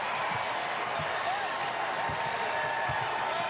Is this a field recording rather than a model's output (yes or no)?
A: yes